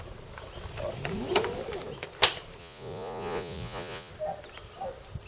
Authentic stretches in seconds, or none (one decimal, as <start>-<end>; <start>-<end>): 0.0-2.6; 4.1-5.3